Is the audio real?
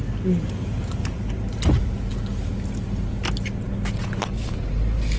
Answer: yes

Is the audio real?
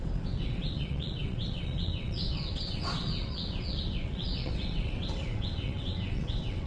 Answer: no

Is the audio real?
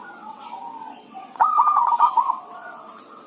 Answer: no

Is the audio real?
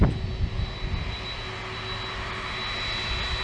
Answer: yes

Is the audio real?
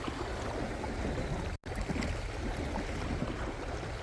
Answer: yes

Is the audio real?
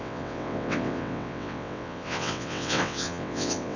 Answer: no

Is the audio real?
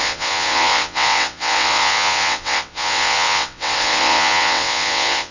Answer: no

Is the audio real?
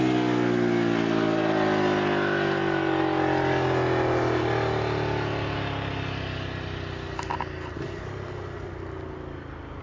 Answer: yes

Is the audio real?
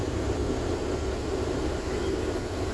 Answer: yes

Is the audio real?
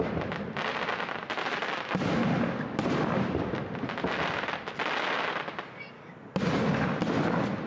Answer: yes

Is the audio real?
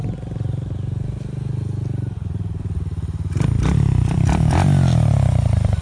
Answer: yes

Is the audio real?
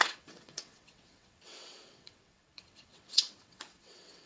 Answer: no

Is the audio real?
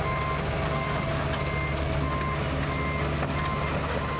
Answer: yes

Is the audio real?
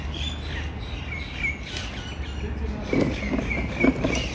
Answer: yes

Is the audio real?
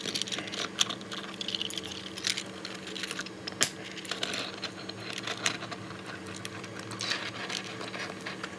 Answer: yes